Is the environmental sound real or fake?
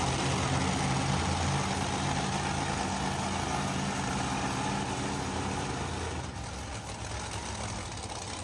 real